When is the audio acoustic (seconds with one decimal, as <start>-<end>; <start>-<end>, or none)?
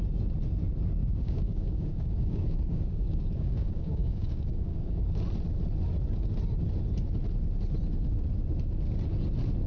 0.0-1.0; 5.1-9.7